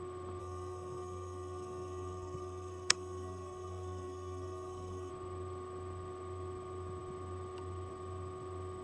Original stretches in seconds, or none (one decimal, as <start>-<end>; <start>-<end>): 0.0-0.4; 5.1-8.8